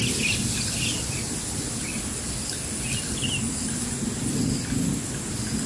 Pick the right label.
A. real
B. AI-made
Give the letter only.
A